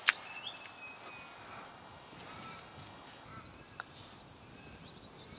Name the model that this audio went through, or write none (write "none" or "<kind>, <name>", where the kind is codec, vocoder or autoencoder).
none